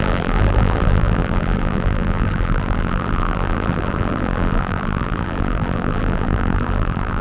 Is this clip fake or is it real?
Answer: fake